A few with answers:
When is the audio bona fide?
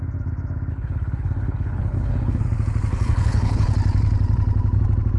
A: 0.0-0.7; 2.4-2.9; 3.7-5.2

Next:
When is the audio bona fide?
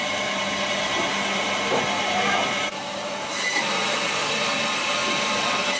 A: none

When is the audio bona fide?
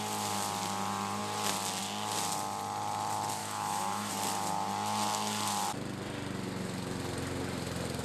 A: 0.0-3.4; 4.1-8.0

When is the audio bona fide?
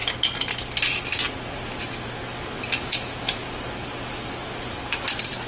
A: 0.0-5.5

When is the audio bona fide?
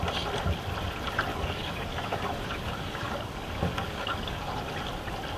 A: 0.0-1.3; 4.5-5.4